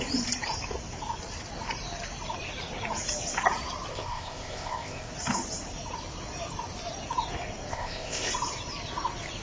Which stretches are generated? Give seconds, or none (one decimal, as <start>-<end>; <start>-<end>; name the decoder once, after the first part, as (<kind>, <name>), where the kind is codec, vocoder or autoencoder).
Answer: 3.9-5.1 (codec, ZipCodec); 7.7-8.3